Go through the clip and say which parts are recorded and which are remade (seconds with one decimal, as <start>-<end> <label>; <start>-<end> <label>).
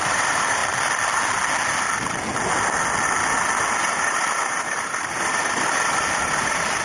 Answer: 0.0-0.6 remade; 0.6-3.9 recorded; 3.9-6.8 remade